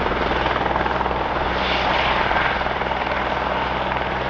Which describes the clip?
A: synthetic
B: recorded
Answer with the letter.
B